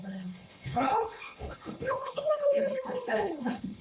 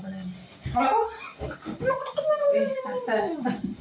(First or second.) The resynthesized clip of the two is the first